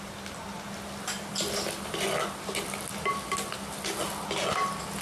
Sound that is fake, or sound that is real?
real